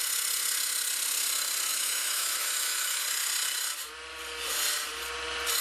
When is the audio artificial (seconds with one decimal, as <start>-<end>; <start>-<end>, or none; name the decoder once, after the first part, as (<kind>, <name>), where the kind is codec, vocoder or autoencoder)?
1.7-3.0 (autoencoder, DAC-VAE)